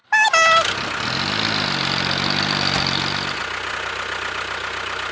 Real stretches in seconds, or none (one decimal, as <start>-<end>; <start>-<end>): 0.0-5.1